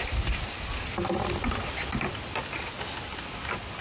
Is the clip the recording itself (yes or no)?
yes